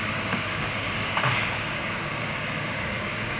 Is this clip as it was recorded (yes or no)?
no